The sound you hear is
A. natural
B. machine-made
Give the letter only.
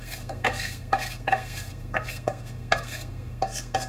B